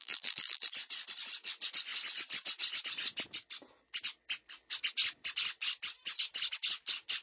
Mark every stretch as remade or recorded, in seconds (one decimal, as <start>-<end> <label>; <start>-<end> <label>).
0.0-0.7 remade; 0.7-7.2 recorded